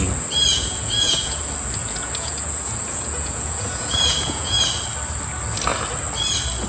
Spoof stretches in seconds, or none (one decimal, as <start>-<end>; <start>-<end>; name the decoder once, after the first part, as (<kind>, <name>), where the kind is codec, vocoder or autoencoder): 0.5-1.4 (vocoder, Vocos); 1.8-4.6